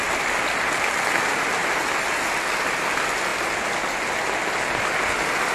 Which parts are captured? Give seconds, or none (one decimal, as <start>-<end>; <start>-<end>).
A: 0.0-5.5